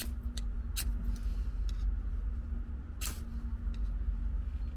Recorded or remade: recorded